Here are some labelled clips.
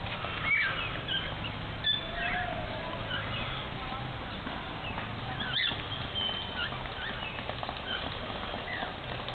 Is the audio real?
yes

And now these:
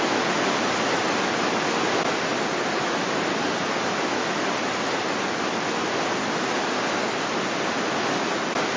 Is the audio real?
yes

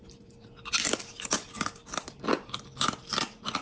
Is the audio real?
yes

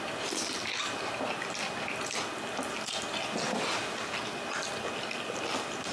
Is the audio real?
yes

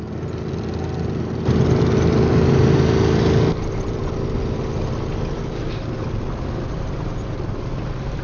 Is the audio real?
yes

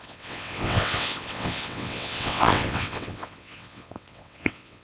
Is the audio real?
no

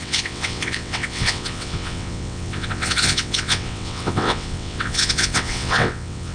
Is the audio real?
no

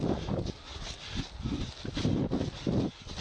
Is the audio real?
yes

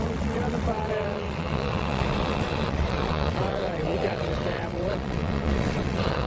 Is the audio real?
no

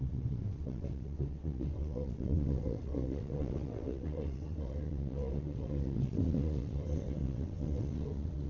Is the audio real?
no